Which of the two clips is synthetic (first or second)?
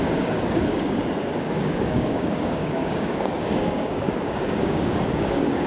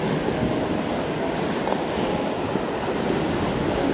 first